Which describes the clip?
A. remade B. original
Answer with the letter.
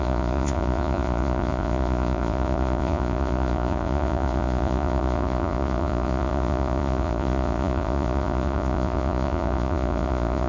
A